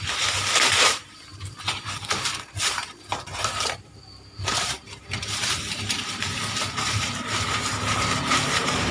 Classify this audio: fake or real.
fake